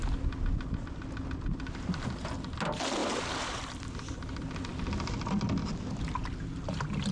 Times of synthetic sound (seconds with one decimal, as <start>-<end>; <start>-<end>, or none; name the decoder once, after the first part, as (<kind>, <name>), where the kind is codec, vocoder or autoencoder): 3.0-3.7 (vocoder, BigVGAN v2)